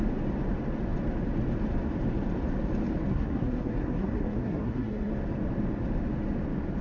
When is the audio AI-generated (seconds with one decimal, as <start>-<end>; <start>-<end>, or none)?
3.1-5.1